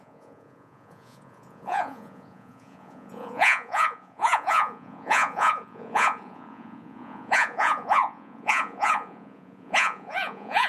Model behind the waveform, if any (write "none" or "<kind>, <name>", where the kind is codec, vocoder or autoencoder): vocoder, Vocos